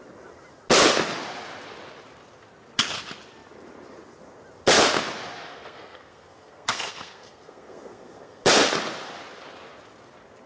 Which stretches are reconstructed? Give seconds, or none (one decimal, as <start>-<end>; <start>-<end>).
5.5-8.4